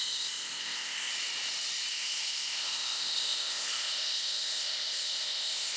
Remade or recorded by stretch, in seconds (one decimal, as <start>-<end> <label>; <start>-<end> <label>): 0.0-1.1 remade; 1.1-1.9 recorded; 1.9-5.8 remade